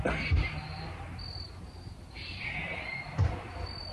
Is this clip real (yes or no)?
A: yes